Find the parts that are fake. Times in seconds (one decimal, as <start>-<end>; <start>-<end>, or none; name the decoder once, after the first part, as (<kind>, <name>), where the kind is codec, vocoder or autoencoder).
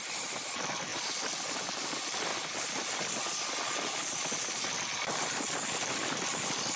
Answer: none